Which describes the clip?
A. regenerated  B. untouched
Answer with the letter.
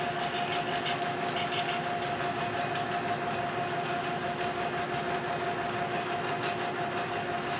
B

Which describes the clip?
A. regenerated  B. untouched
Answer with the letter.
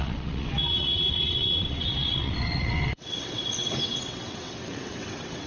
A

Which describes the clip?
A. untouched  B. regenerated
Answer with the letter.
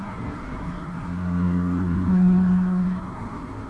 B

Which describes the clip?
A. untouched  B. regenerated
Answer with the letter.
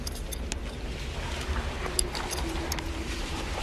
A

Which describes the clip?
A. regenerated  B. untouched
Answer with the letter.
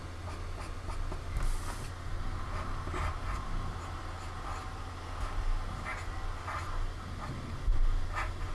B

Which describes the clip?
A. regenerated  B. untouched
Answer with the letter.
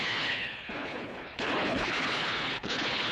A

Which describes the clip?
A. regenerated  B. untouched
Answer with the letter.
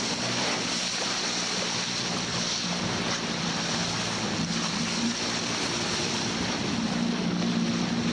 B